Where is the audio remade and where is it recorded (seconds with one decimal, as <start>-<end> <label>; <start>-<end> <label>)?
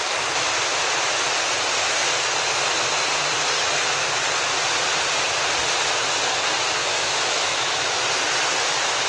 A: 0.0-6.8 recorded; 6.8-8.0 remade; 8.0-9.1 recorded